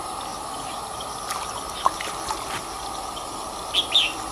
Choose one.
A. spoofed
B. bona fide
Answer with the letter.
B